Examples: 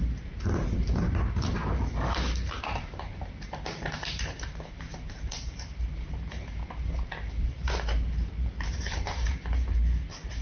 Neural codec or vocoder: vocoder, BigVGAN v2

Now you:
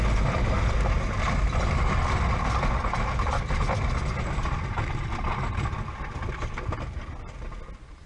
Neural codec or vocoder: none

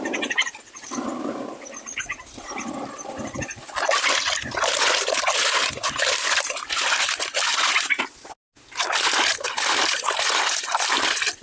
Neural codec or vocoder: none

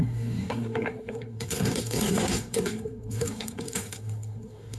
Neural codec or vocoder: codec, SNAC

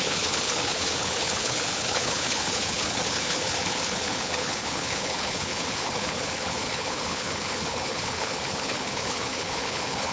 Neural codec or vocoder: codec, HILCodec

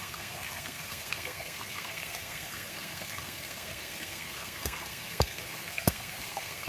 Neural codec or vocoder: codec, SNAC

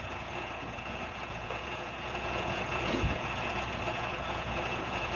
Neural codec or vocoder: vocoder, Vocos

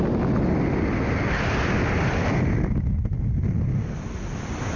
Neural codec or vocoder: none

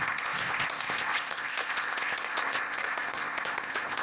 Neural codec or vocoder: codec, ZipCodec